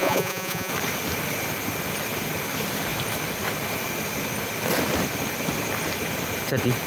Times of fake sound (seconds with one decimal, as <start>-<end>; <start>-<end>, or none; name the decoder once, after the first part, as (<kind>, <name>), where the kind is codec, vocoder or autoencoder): 0.0-0.7 (vocoder, Vocos)